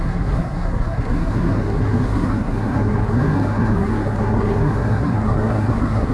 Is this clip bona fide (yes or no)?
no